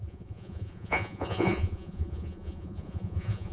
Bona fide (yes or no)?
no